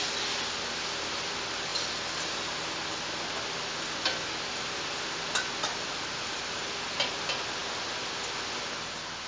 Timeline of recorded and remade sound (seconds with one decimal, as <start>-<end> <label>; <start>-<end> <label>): 0.0-9.3 recorded